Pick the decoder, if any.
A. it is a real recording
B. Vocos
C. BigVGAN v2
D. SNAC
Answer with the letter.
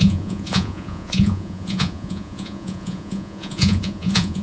B